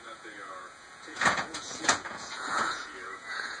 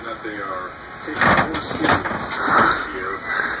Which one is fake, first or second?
first